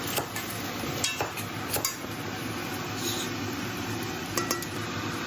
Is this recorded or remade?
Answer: recorded